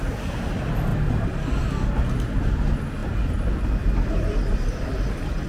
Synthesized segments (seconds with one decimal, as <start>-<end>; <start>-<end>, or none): none